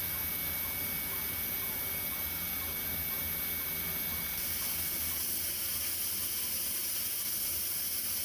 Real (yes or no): yes